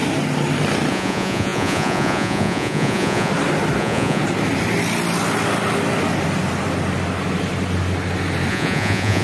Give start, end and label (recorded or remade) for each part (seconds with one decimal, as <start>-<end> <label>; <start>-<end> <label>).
0.0-0.9 recorded; 0.9-3.3 remade; 3.3-3.8 recorded; 3.8-4.2 remade; 4.2-8.5 recorded; 8.5-9.2 remade